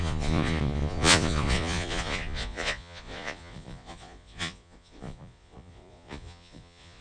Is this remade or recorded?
remade